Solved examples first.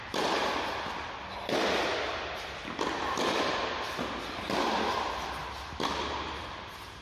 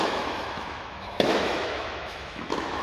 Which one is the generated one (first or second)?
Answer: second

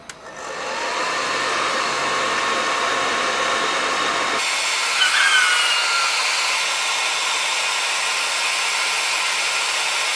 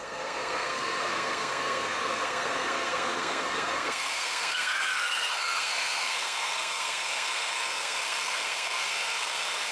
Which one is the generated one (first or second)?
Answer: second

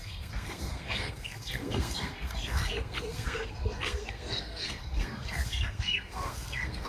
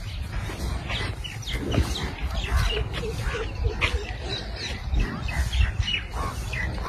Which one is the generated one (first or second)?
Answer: first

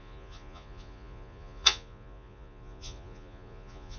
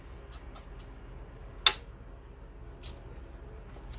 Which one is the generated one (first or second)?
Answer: first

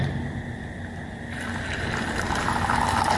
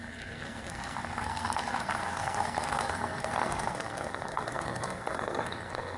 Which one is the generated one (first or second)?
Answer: second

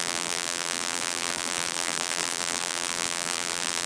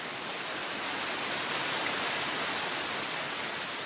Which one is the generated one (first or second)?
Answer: first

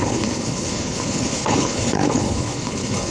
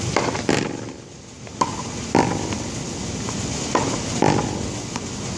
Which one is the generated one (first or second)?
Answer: first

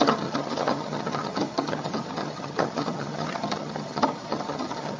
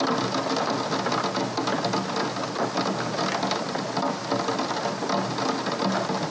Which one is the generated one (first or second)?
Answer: first